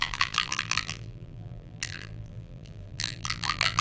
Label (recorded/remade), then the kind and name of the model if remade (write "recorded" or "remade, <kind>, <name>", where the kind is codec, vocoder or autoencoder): remade, vocoder, BigVGAN v2